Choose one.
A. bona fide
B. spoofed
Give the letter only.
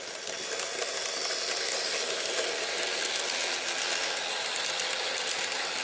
A